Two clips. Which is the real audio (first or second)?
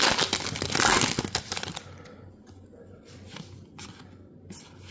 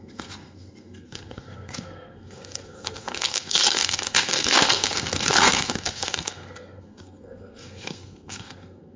first